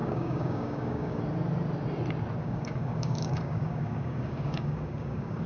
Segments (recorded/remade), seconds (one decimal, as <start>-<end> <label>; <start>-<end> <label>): 0.0-1.2 remade; 1.2-2.4 recorded; 2.4-5.5 remade

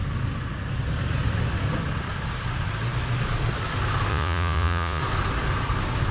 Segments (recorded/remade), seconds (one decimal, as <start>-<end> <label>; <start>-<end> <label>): 0.0-4.1 recorded; 4.1-5.0 remade; 5.0-6.1 recorded

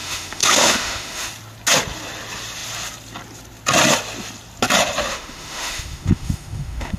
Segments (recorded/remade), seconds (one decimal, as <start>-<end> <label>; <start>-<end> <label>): 0.0-1.3 remade; 1.3-5.1 recorded; 5.1-7.0 remade

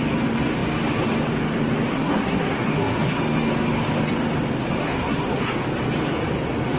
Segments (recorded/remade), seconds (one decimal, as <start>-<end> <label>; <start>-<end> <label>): 0.0-1.9 recorded; 1.9-3.2 remade; 3.2-4.8 recorded; 4.8-5.4 remade; 5.4-6.8 recorded